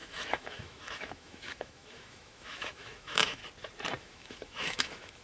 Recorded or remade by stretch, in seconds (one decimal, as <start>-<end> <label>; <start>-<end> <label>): 0.0-3.4 remade; 3.4-4.0 recorded; 4.0-5.2 remade